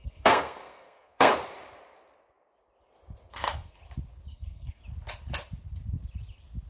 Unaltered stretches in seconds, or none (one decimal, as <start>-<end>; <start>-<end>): 1.3-3.3; 3.8-4.3; 4.8-6.7